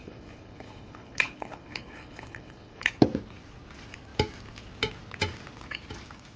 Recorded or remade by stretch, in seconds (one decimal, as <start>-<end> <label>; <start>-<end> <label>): 0.0-2.9 remade; 2.9-6.4 recorded